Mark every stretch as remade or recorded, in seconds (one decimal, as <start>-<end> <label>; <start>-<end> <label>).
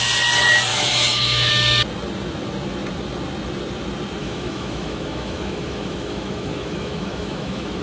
0.0-0.7 recorded; 0.7-1.5 remade; 1.5-4.2 recorded; 4.2-7.8 remade